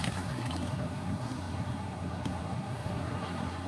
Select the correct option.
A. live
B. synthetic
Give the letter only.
B